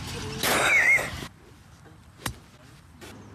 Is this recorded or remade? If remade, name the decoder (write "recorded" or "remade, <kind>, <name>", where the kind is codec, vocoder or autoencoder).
recorded